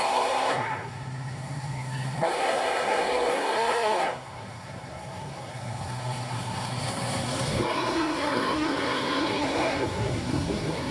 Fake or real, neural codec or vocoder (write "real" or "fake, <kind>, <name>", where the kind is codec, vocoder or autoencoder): fake, codec, SNAC